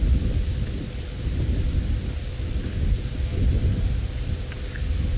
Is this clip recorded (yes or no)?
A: yes